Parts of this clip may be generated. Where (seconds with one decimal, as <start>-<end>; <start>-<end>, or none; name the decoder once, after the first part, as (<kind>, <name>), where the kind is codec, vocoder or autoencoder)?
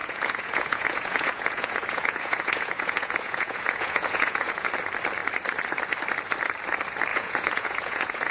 0.0-4.7 (vocoder, Vocos); 7.1-8.3